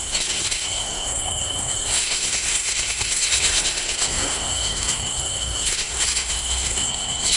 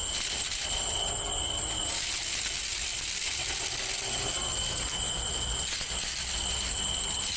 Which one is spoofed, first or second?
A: first